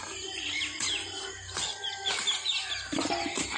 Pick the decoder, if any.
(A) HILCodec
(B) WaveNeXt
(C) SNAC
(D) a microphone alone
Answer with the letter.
D